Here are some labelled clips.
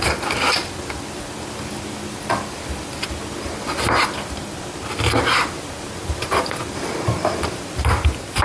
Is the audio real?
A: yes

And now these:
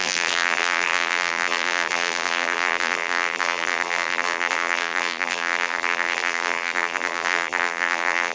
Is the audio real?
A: no